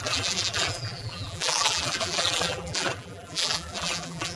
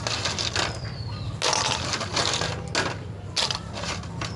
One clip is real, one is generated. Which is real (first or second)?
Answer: second